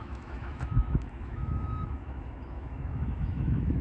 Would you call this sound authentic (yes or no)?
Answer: no